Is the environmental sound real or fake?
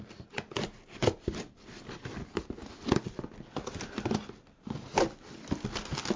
real